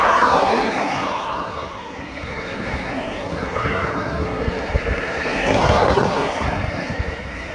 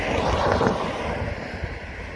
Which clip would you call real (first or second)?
second